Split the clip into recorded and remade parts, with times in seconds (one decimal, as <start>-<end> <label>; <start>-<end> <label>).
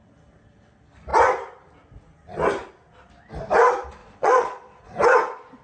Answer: 0.0-4.0 recorded; 4.0-4.9 remade; 4.9-5.6 recorded